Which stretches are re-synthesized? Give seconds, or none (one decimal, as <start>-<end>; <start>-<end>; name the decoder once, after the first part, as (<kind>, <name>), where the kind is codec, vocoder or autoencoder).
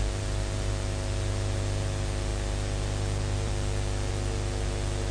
none